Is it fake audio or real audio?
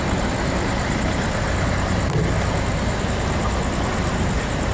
real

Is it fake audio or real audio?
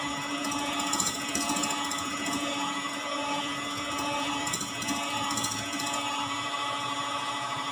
fake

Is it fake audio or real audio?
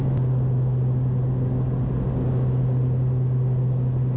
real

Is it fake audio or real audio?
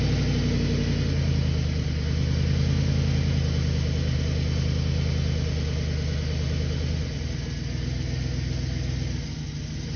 real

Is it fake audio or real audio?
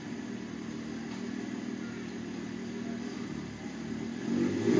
real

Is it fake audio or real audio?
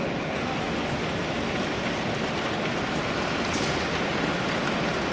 real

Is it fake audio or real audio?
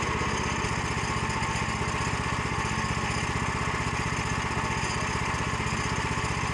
real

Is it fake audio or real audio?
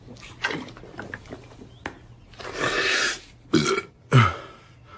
real